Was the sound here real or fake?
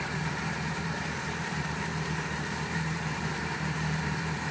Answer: fake